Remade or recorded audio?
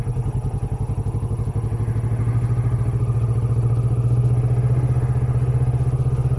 recorded